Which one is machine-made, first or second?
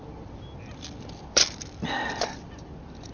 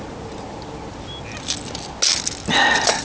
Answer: first